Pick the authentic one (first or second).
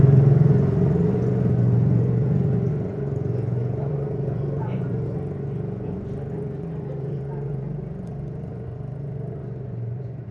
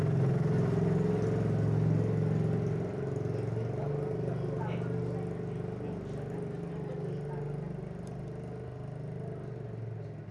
second